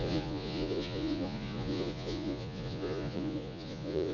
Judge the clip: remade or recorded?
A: remade